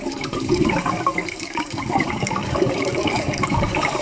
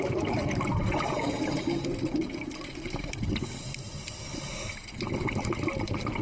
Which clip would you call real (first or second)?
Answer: second